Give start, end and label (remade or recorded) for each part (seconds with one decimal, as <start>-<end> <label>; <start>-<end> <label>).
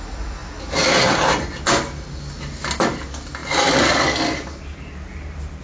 0.0-5.6 recorded